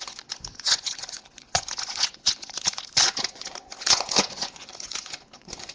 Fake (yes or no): yes